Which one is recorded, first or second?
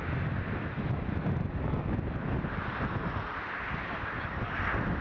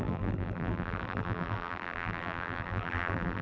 first